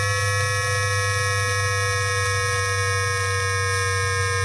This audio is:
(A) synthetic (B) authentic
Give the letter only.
B